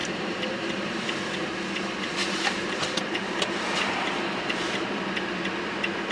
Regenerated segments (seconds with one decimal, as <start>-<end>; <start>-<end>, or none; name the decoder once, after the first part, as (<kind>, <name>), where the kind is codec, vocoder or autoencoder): 0.0-0.9 (vocoder, BigVGAN v2); 2.2-5.0